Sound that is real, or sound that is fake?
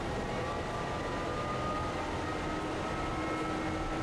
real